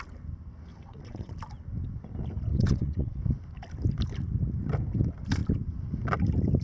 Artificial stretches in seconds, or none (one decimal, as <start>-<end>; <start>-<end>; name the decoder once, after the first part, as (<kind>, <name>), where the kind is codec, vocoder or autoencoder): 0.7-1.3 (vocoder, WaveNeXt); 2.5-3.2